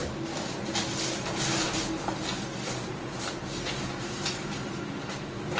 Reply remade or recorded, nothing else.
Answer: recorded